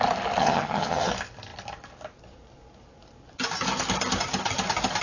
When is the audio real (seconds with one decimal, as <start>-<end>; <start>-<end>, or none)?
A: 0.0-0.4; 1.1-5.0